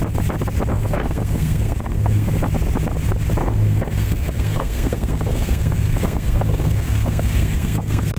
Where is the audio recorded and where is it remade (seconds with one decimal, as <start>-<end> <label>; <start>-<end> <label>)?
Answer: 0.0-0.7 recorded; 0.7-2.4 remade; 2.4-3.4 recorded; 3.4-8.2 remade